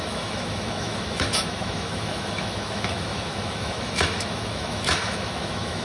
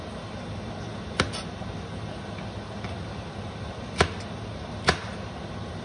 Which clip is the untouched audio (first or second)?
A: second